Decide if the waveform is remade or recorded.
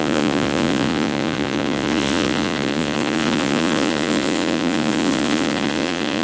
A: remade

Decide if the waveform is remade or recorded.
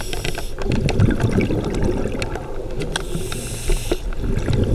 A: recorded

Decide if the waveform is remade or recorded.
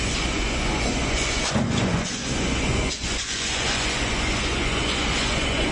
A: remade